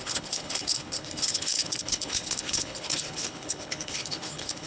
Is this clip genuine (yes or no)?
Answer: no